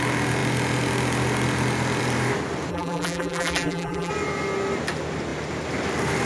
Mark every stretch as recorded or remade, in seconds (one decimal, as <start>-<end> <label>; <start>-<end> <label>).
0.0-2.7 recorded; 2.7-4.1 remade; 4.1-6.3 recorded